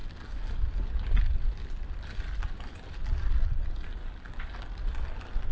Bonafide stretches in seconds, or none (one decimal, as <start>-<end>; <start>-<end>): 0.0-0.6